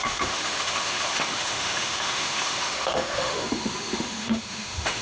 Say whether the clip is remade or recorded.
remade